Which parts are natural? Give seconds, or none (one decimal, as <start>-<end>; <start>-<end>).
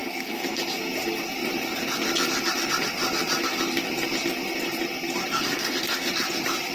0.6-5.3; 6.1-6.7